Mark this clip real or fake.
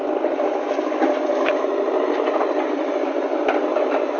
real